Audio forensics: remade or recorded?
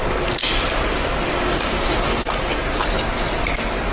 recorded